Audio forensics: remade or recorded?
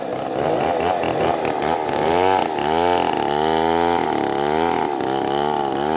recorded